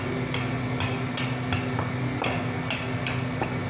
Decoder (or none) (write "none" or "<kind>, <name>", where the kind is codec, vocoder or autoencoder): none